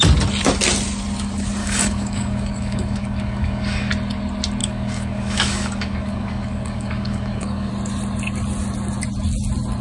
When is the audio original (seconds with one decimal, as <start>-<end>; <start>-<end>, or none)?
0.0-1.6; 3.9-4.6; 7.7-9.8